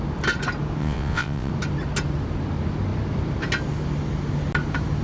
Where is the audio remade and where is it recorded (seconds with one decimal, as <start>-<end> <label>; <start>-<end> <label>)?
0.0-0.8 recorded; 0.8-1.5 remade; 1.5-5.0 recorded